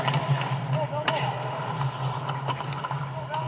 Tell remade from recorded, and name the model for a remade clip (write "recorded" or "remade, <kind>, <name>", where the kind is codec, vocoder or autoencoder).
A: recorded